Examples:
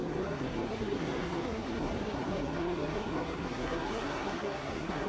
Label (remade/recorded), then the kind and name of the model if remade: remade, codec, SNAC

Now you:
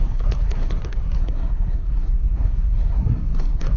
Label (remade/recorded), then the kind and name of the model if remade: remade, codec, SNAC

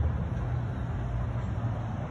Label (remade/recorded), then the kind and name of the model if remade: recorded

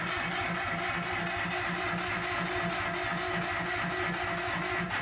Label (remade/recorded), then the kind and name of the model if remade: recorded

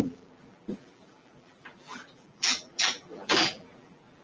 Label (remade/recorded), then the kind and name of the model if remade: remade, vocoder, BigVGAN v2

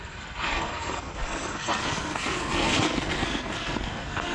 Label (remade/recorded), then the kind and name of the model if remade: remade, codec, SNAC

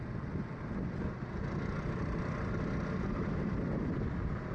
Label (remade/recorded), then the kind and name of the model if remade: recorded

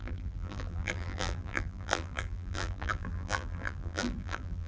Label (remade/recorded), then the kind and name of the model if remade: remade, vocoder, BigVGAN v2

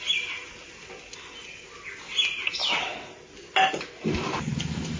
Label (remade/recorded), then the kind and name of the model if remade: recorded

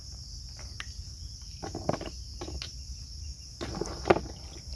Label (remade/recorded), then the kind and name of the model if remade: recorded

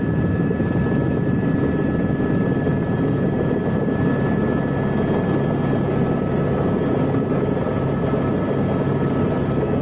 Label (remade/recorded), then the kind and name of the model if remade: recorded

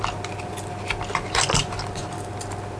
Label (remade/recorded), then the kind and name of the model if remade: recorded